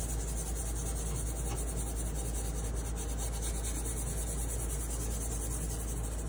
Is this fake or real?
real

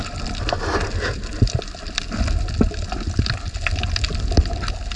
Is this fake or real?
real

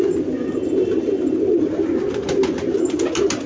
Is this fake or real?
real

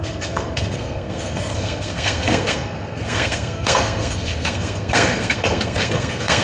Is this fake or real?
fake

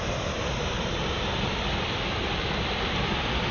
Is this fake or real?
real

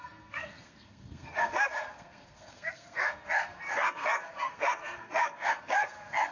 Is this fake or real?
fake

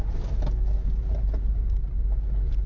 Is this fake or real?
real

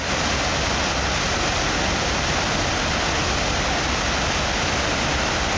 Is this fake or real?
real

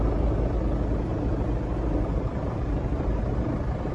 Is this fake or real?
real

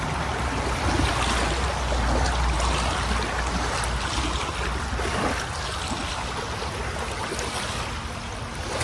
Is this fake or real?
real